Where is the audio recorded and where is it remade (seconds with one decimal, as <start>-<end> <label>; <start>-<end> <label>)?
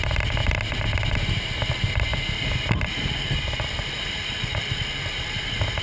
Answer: 0.0-5.8 recorded